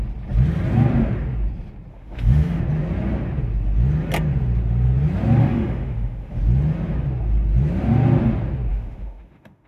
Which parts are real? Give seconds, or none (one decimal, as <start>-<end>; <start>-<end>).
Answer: 0.0-1.9; 2.6-5.4; 6.4-8.7